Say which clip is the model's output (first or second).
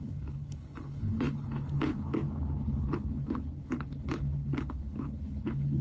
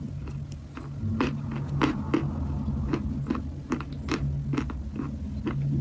first